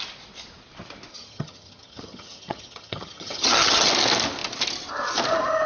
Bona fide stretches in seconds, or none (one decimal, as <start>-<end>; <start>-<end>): 0.0-1.1; 3.9-5.7